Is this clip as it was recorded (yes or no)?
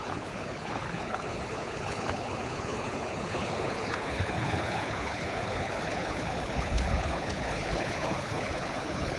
no